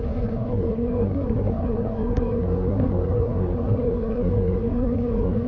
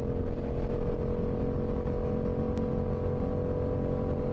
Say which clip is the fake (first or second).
first